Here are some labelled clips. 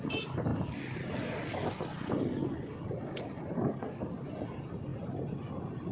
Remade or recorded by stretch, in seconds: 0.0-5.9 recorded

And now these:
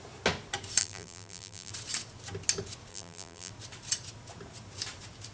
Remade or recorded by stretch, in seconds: 0.0-0.8 recorded; 0.8-1.7 remade; 1.7-2.9 recorded; 2.9-3.5 remade; 3.5-5.3 recorded

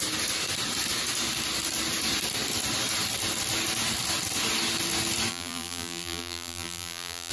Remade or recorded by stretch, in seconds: 0.0-5.3 recorded; 5.3-7.3 remade